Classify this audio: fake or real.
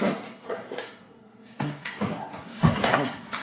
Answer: fake